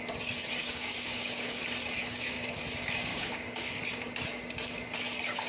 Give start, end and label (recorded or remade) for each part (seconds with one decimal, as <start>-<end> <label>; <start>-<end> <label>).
0.0-0.6 recorded; 0.6-1.6 remade; 1.6-2.0 recorded; 2.0-2.6 remade; 2.6-3.1 recorded; 3.1-3.8 remade; 3.8-5.5 recorded